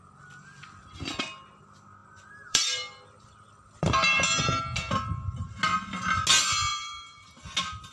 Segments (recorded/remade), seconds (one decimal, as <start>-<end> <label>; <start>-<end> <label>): 0.0-2.0 recorded; 2.0-4.6 remade; 4.6-6.7 recorded; 6.7-7.4 remade; 7.4-7.9 recorded